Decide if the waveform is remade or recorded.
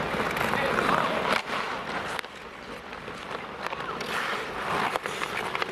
recorded